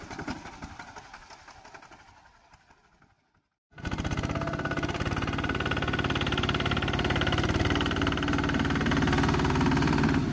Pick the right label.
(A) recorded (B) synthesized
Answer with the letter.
A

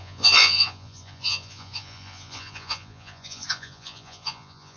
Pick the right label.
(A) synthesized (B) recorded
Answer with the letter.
A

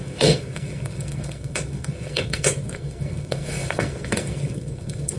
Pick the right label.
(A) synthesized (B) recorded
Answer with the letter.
A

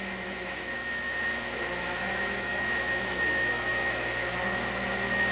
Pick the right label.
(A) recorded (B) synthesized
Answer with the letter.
B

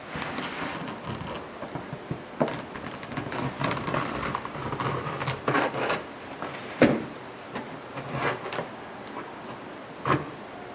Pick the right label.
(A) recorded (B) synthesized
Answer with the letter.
A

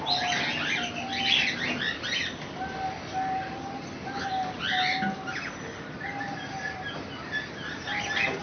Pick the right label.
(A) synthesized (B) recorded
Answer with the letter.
B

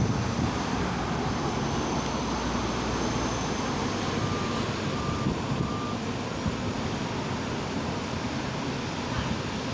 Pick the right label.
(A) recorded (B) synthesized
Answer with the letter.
A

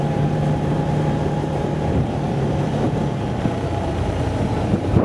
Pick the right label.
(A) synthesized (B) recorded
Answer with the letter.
A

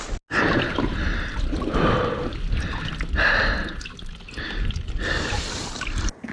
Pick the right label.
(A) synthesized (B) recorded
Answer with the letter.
B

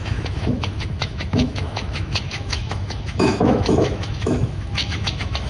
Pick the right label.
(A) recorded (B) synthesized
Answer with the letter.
B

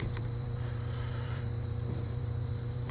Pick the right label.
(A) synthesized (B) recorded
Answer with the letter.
A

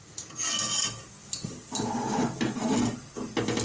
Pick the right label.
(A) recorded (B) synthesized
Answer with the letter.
A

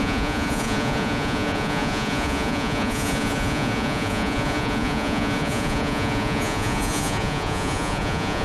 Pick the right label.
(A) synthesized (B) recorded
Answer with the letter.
A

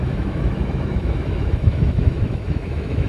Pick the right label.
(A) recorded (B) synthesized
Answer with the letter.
B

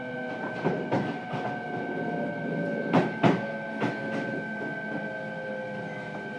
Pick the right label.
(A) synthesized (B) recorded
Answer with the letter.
B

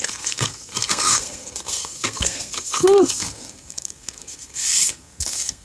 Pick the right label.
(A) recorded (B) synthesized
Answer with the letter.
B